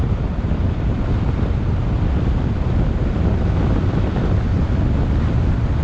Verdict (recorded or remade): recorded